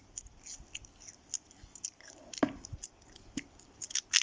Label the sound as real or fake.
real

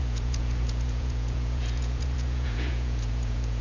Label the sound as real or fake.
fake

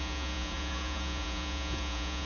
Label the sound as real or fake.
fake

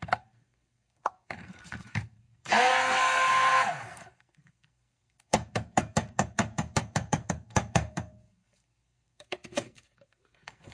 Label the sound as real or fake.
fake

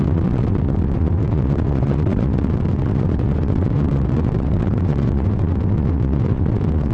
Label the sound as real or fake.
fake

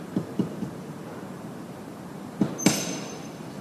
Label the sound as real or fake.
fake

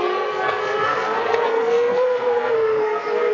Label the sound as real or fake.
fake